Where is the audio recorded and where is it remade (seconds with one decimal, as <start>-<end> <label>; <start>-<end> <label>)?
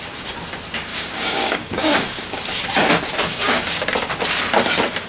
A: 0.0-0.9 recorded; 0.9-2.4 remade; 2.4-3.3 recorded; 3.3-3.9 remade; 3.9-5.1 recorded